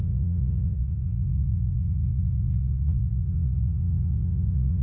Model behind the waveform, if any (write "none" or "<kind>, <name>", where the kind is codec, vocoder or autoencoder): vocoder, Vocos